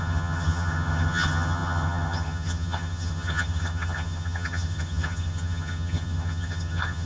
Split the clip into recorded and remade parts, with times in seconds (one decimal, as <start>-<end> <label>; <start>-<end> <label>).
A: 0.0-7.1 remade